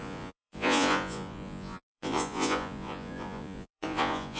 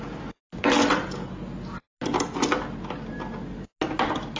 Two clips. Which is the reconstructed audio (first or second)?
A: first